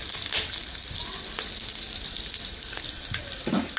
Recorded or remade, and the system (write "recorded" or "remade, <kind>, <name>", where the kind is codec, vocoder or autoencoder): recorded